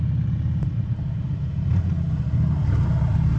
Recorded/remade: recorded